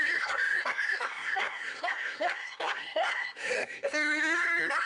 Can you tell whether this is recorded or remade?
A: remade